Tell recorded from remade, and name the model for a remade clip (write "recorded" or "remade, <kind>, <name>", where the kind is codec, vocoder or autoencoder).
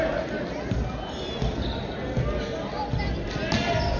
recorded